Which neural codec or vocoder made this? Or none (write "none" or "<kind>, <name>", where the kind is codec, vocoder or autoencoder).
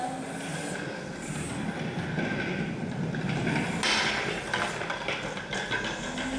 none